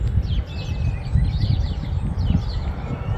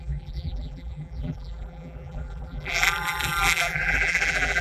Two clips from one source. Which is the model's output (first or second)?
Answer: second